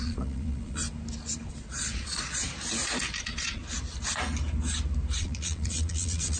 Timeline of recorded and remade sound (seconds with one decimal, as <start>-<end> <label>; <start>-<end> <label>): 0.0-0.8 remade; 0.8-1.5 recorded; 1.5-2.4 remade; 2.4-3.2 recorded; 3.2-3.6 remade; 3.6-5.2 recorded; 5.2-6.4 remade